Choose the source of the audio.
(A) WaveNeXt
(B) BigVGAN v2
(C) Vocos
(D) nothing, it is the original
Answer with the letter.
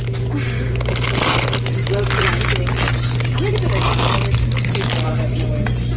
D